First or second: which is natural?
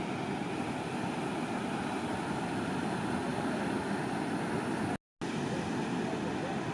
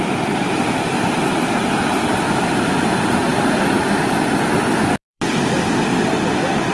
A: first